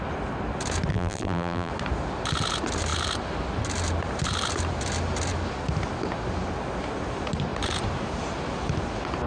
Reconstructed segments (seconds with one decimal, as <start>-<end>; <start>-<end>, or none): 0.9-1.7